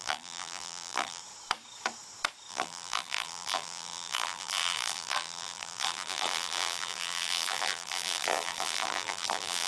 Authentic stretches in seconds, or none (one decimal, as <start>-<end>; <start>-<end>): 1.2-2.5